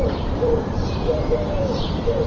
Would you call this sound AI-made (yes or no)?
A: yes